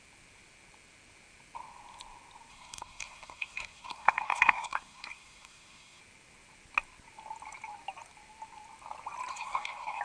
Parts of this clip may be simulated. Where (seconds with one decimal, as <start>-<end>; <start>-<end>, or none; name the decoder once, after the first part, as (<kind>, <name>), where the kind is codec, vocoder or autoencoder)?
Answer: 2.5-6.0 (codec, SNAC); 9.3-10.0